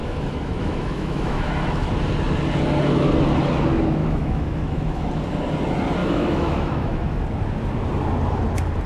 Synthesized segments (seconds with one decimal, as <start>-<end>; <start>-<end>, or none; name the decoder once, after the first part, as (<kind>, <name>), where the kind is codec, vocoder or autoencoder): 0.0-1.9 (autoencoder, DAC-VAE); 4.0-5.1; 6.0-7.2